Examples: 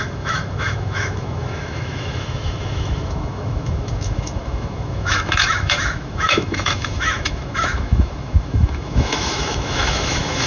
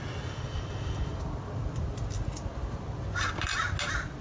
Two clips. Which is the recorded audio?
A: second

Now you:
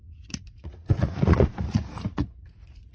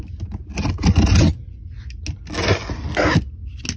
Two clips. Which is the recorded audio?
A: second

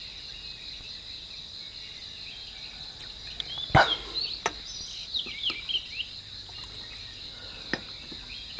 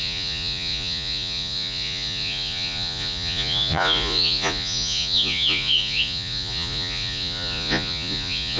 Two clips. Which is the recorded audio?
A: first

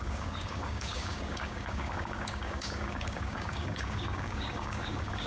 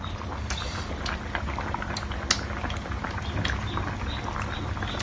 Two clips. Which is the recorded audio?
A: second